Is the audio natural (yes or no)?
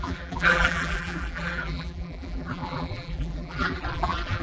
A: no